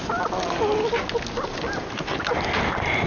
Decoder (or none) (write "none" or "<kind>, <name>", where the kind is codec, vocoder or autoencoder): none